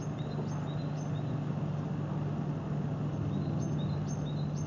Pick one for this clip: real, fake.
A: real